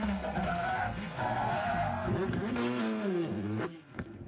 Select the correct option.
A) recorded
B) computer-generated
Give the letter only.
B